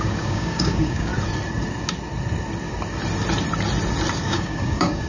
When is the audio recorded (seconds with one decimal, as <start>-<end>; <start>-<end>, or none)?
1.1-4.2